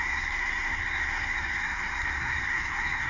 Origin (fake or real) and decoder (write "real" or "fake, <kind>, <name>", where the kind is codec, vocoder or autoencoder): fake, codec, SNAC